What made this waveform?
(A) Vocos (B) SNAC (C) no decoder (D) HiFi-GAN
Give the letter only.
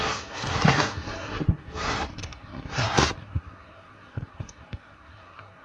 B